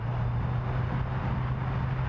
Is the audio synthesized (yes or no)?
no